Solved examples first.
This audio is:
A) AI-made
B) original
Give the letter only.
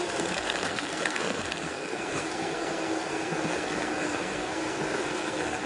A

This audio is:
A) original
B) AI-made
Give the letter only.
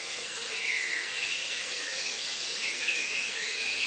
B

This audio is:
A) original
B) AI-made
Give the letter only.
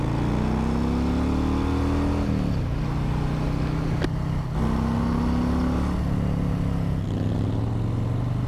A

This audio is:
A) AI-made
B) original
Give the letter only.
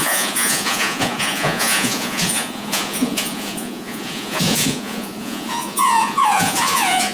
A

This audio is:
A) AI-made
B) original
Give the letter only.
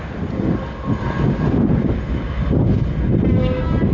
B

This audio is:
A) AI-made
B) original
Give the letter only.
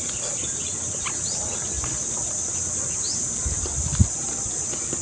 B